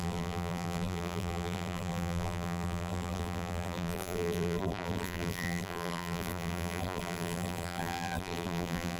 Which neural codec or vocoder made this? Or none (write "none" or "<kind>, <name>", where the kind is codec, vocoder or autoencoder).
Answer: vocoder, BigVGAN v2